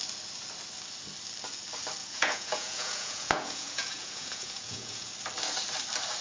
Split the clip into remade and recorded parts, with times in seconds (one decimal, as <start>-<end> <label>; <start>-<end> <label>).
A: 0.0-2.0 recorded; 2.0-5.1 remade; 5.1-6.2 recorded